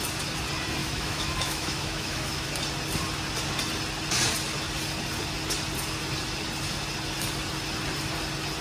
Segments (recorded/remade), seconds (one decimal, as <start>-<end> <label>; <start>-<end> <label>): 0.0-0.8 recorded; 0.8-2.5 remade; 2.5-8.6 recorded